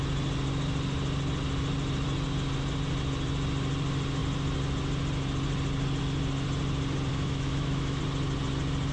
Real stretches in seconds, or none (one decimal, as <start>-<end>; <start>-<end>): 0.0-7.1; 8.0-8.9